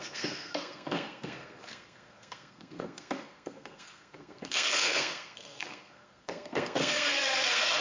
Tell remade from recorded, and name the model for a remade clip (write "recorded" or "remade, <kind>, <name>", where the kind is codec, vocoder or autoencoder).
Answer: remade, codec, SNAC